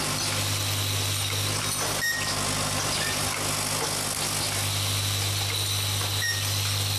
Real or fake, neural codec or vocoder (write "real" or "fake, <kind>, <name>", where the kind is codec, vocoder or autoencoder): real